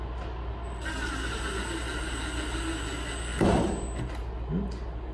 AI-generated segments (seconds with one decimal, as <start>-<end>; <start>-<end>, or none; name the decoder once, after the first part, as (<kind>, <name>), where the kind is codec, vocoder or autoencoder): none